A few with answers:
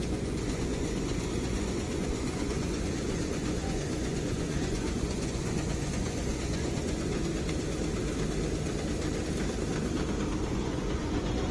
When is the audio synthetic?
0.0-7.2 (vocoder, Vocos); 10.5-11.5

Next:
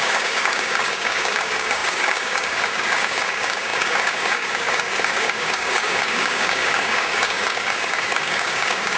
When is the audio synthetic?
0.0-9.0 (codec, DAC)

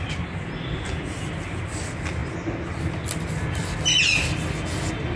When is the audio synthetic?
none

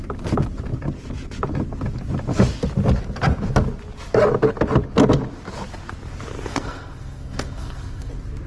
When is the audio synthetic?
6.5-8.1 (codec, SNAC)

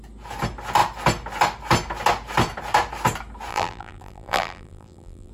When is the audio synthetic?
3.5-5.3 (vocoder, BigVGAN v2)

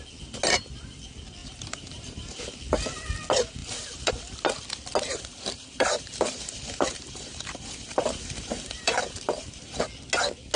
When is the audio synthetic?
1.4-2.4 (vocoder, BigVGAN v2); 3.6-4.1; 5.1-9.8